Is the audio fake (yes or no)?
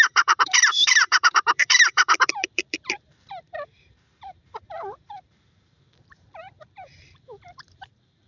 yes